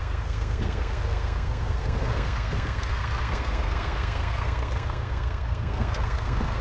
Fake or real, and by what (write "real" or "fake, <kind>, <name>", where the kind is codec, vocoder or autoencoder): fake, codec, SNAC